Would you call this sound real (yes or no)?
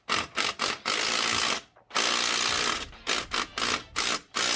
yes